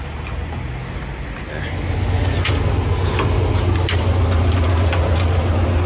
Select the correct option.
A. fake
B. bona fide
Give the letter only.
B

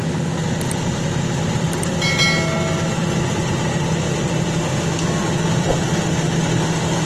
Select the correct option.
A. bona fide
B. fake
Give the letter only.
A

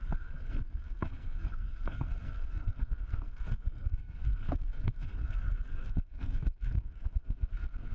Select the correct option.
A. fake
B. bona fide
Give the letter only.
A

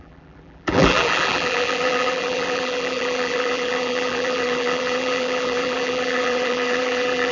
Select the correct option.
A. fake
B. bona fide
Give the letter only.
A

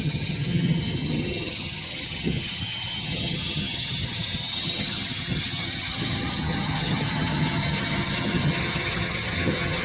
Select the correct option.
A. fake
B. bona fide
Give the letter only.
A